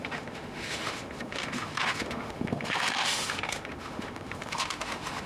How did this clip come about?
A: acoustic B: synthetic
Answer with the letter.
B